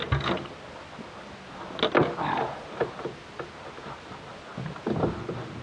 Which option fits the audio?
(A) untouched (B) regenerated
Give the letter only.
A